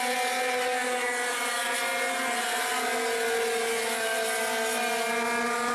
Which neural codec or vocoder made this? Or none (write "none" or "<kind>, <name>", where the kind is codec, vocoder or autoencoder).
none